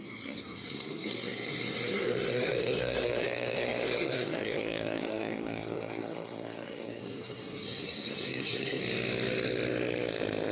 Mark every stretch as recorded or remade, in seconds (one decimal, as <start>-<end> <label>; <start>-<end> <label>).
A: 0.0-8.8 remade; 8.8-10.5 recorded